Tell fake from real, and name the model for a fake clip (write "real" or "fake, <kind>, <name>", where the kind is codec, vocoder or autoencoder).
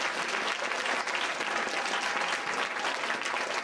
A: real